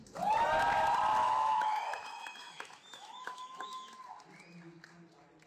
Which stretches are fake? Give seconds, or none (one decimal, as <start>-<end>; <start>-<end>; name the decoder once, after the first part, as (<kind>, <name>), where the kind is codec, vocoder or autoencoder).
1.2-4.0 (autoencoder, DAC-VAE)

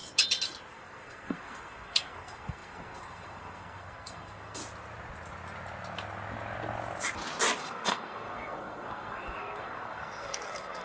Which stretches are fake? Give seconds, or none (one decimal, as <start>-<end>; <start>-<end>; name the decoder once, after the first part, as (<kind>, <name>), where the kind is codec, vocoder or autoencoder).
0.7-4.6 (codec, SNAC); 7.6-10.8

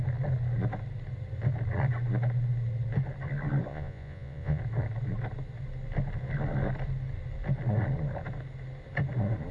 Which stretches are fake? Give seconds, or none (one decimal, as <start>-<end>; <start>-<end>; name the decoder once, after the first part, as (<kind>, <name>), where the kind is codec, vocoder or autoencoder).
3.7-4.6 (vocoder, Vocos)

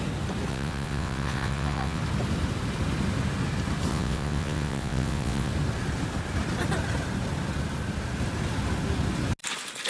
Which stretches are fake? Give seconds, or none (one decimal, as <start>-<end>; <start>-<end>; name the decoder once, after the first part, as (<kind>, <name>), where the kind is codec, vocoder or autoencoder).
0.5-2.0 (vocoder, WaveNeXt); 3.9-5.5

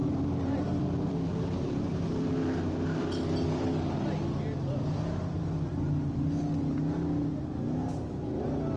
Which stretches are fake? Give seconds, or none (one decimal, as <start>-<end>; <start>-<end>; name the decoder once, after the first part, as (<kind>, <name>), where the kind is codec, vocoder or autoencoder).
none

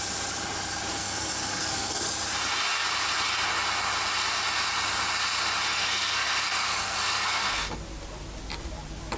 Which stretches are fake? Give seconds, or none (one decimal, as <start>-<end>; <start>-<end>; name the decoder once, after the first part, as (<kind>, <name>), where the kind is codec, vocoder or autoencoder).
0.9-2.0 (codec, SNAC); 5.7-7.8